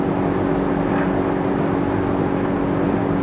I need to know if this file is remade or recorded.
recorded